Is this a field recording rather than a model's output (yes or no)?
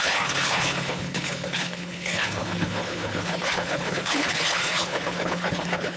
no